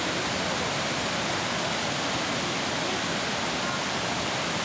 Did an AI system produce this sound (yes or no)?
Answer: yes